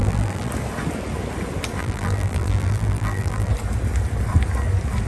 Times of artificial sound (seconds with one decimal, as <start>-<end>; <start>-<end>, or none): 0.0-0.5; 1.8-3.5